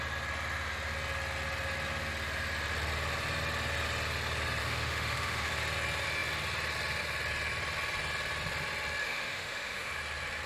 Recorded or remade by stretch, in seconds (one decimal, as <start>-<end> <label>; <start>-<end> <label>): 0.0-4.6 recorded; 4.6-5.5 remade; 5.5-9.0 recorded; 9.0-9.9 remade; 9.9-10.5 recorded